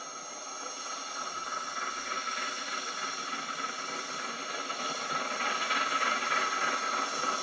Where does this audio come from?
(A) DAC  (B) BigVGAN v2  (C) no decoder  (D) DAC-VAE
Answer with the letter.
C